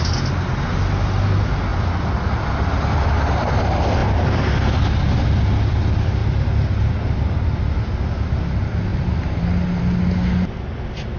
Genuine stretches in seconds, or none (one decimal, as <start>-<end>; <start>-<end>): 0.0-11.2